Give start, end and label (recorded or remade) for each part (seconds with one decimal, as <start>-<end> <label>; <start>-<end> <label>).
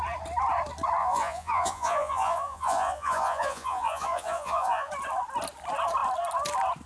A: 0.0-1.0 recorded; 1.0-4.9 remade; 4.9-6.9 recorded